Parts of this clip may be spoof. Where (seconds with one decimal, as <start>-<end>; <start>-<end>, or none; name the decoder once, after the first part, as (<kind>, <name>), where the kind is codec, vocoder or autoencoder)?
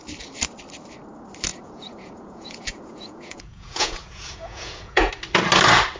1.5-5.1 (vocoder, Vocos)